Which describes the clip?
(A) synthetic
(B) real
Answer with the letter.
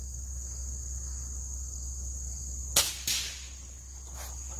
B